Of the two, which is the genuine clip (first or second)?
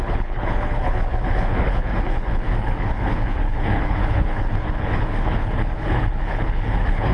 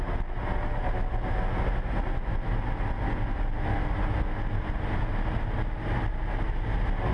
second